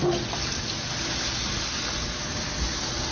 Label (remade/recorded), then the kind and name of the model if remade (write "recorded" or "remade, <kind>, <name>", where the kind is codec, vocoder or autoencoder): recorded